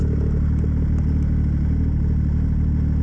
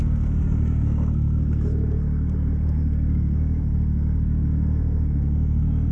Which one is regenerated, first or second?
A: second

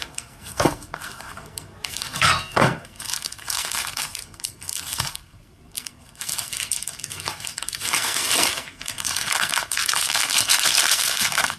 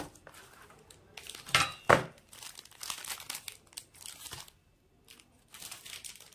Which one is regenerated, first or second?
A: first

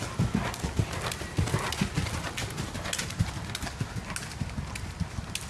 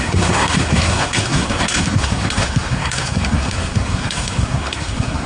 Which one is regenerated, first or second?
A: second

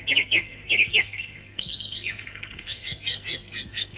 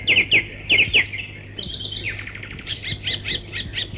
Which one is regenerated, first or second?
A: first